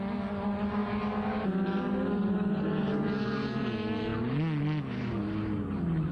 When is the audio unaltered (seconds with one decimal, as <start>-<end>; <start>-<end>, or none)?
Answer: 0.0-6.1